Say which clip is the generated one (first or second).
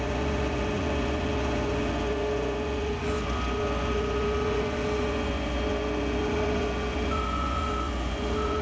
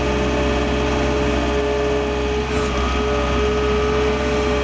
first